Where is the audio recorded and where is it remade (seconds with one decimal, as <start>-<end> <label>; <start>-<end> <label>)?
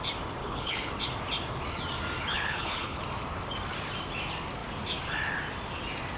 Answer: 0.0-0.4 recorded; 0.4-0.9 remade; 0.9-2.3 recorded; 2.3-3.0 remade; 3.0-6.2 recorded